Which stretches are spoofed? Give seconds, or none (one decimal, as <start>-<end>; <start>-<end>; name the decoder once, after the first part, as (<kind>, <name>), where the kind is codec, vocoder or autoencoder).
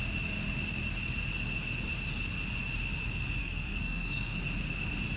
3.4-4.4 (codec, SNAC)